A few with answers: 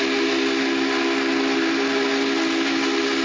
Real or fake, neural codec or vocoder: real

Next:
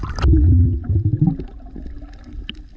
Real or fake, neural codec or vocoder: real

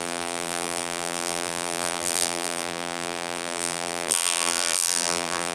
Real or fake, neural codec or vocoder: fake, vocoder, BigVGAN v2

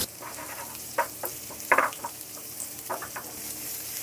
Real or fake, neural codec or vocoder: fake, vocoder, BigVGAN v2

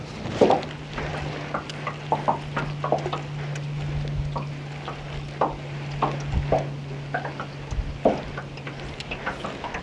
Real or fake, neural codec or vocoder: real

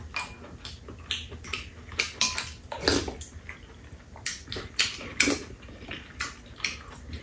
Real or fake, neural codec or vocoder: real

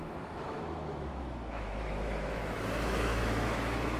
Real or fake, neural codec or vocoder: fake, autoencoder, DAC-VAE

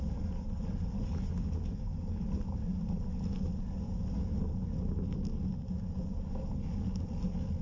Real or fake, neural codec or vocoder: real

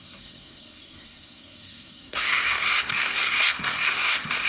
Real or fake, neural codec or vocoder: fake, codec, SNAC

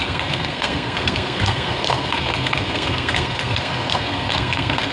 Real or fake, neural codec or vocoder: fake, codec, SNAC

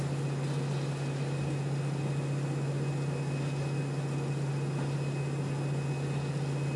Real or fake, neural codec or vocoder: real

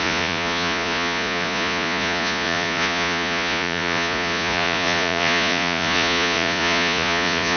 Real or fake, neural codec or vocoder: fake, vocoder, Vocos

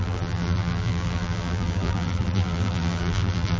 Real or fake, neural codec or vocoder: fake, vocoder, BigVGAN v2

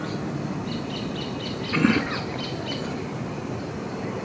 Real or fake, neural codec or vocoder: real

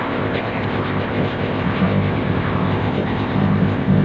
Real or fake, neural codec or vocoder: fake, codec, ZipCodec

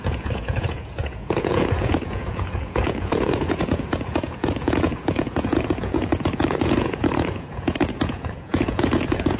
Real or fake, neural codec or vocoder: fake, vocoder, Vocos